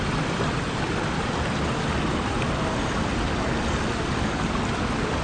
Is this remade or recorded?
recorded